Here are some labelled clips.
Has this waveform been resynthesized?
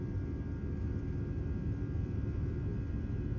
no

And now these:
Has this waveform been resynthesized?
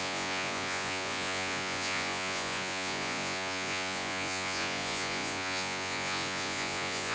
yes